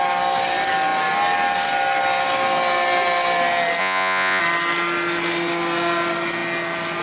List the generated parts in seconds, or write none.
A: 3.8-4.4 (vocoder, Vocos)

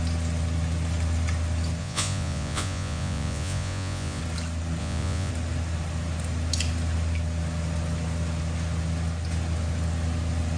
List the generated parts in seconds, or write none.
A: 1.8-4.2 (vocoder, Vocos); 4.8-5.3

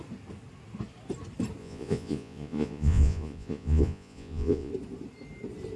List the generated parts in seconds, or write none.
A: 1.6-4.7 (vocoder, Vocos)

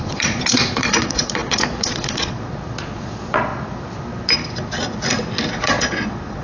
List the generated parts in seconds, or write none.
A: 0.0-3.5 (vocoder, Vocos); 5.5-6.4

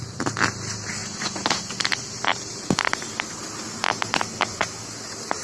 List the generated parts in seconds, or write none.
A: 1.0-1.6 (vocoder, Vocos)

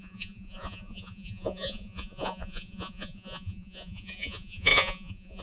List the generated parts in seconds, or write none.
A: 0.0-5.4 (vocoder, Vocos)

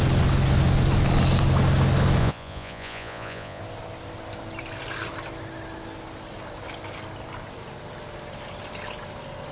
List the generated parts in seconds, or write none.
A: 2.2-3.6 (vocoder, Vocos)

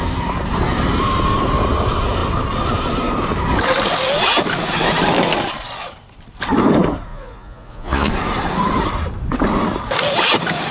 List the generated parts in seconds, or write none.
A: 7.1-8.1 (vocoder, Vocos)